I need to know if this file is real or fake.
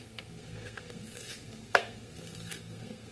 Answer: fake